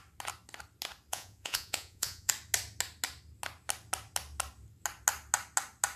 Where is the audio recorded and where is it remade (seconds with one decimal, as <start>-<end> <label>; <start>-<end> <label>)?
0.0-1.1 recorded; 1.1-2.3 remade; 2.3-6.0 recorded